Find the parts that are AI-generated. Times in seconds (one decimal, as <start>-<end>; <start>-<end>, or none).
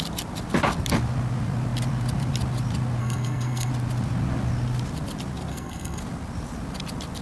3.0-3.7; 5.5-6.0